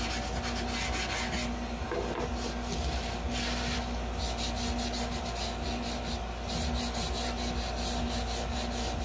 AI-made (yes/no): no